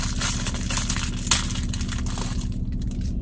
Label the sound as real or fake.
real